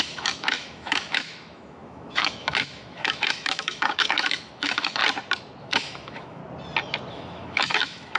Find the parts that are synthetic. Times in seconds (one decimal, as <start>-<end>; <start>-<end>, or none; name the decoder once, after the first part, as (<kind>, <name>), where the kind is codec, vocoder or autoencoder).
0.0-5.0 (autoencoder, DAC-VAE); 5.6-6.4; 7.1-8.2